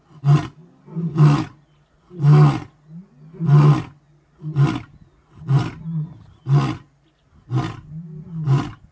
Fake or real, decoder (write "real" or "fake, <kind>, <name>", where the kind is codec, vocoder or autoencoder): real